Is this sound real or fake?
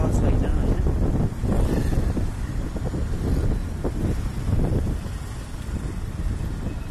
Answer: real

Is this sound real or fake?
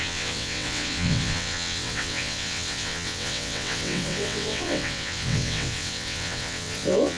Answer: fake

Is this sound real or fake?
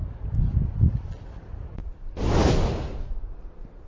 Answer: real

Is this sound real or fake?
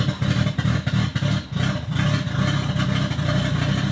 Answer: real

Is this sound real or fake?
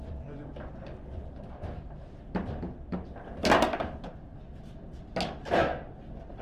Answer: real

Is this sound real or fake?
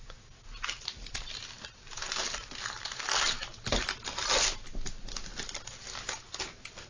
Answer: real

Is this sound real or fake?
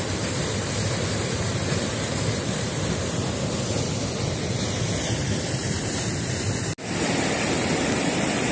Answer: real